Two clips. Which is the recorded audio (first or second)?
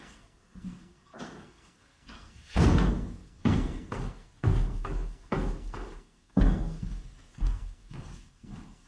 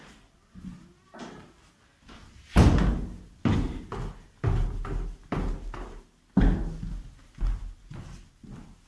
second